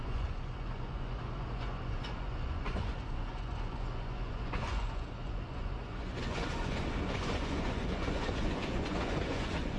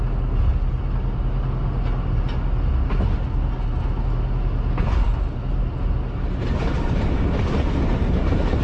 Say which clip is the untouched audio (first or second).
second